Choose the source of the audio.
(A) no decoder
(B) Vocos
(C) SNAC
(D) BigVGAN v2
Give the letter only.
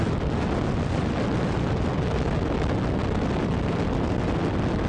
A